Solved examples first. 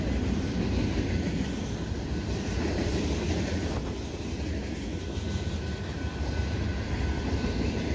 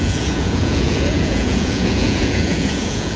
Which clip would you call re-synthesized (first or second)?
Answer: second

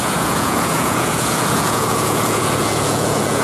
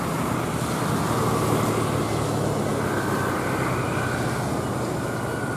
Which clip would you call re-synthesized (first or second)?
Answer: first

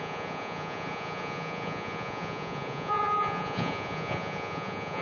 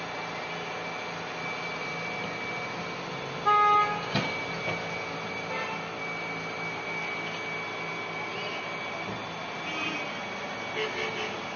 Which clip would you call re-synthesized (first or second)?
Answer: first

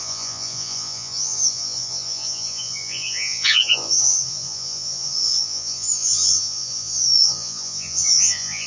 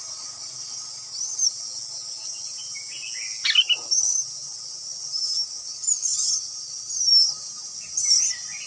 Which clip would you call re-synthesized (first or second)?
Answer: first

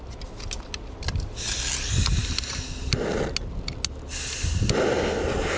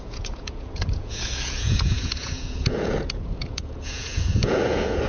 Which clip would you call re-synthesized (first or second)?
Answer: second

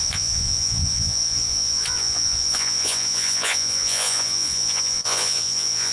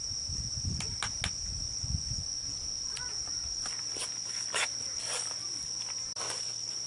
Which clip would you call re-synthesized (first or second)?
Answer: first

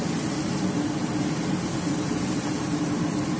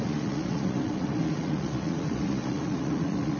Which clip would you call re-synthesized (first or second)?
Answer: second